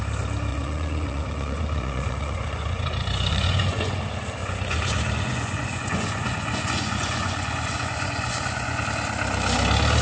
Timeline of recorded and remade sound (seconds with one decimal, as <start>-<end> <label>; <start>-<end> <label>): 0.0-0.5 recorded; 0.5-4.0 remade; 4.0-4.4 recorded; 4.4-8.8 remade; 8.8-10.0 recorded

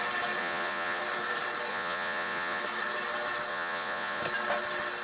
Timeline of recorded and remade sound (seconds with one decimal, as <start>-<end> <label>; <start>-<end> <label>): 0.0-0.4 recorded; 0.4-1.0 remade; 1.0-1.7 recorded; 1.7-2.6 remade; 2.6-3.5 recorded; 3.5-4.2 remade; 4.2-5.0 recorded

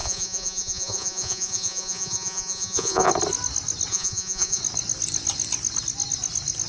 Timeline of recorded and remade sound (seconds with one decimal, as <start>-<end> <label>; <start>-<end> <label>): 0.0-3.1 remade; 3.1-3.9 recorded; 3.9-4.6 remade; 4.6-6.7 recorded

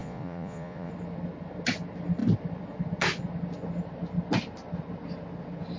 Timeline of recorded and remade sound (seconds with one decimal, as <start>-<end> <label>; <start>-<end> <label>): 0.0-0.9 remade; 0.9-5.8 recorded

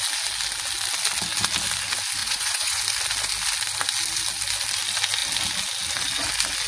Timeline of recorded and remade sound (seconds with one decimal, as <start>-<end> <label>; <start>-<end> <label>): 0.0-2.2 recorded; 2.2-2.8 remade; 2.8-6.7 recorded